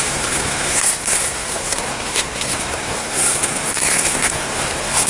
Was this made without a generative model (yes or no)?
no